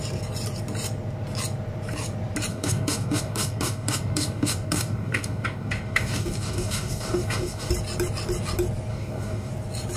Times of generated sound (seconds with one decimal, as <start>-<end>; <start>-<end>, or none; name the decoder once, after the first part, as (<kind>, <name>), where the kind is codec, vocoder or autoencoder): 2.5-7.7 (codec, DAC); 8.9-9.5